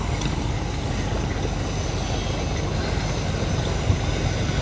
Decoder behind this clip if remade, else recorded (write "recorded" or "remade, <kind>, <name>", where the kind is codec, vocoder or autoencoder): recorded